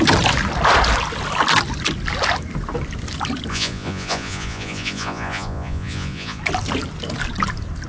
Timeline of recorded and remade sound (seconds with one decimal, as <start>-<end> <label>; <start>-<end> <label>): 0.0-3.5 recorded; 3.5-6.4 remade; 6.4-7.9 recorded